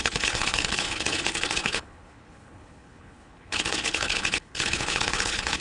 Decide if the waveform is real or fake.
fake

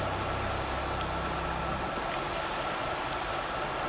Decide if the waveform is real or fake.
real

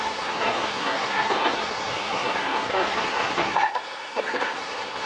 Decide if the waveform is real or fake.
fake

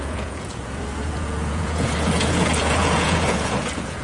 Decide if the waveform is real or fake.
fake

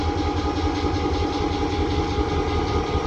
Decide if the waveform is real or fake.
real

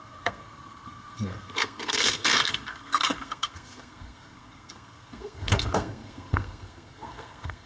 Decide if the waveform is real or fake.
fake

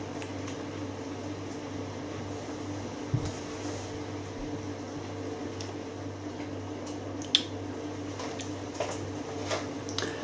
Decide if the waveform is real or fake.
real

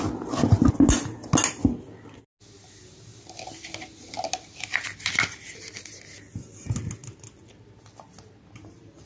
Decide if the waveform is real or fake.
real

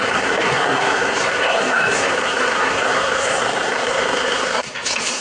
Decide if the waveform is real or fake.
fake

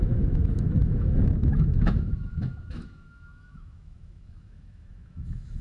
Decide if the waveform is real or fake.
fake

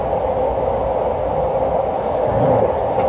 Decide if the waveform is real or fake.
real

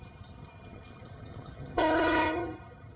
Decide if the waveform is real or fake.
fake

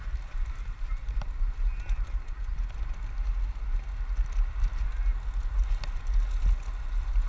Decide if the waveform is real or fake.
real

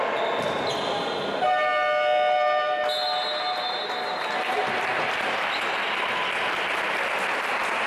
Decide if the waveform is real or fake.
real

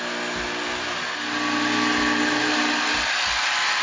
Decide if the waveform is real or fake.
real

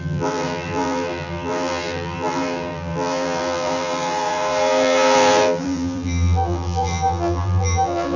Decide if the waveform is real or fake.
fake